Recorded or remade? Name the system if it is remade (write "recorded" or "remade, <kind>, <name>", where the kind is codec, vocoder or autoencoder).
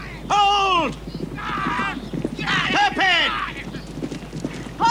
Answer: recorded